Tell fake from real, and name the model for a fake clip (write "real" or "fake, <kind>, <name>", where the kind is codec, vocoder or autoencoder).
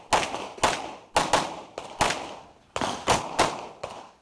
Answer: real